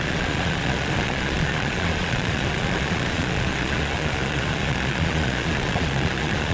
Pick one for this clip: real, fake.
fake